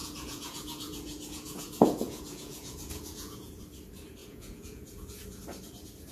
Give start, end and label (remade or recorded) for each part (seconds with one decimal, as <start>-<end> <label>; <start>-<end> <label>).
0.0-3.6 remade; 3.6-4.2 recorded; 4.2-5.4 remade; 5.4-6.1 recorded